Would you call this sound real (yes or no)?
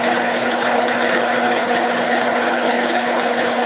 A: no